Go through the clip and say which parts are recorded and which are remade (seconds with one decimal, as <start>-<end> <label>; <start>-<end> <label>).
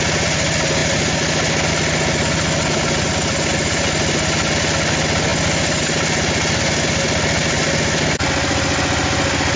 0.0-9.6 recorded